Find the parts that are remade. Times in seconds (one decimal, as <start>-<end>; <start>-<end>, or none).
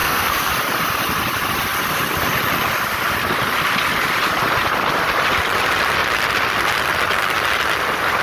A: 0.0-0.5